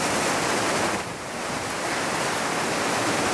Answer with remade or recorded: recorded